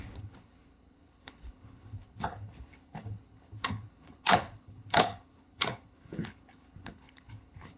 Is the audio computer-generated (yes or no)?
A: yes